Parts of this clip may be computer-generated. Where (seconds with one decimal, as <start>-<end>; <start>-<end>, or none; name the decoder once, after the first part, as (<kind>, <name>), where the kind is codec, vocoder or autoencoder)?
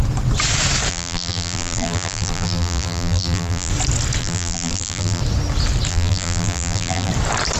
0.9-3.7 (vocoder, BigVGAN v2); 4.2-5.2; 5.9-7.1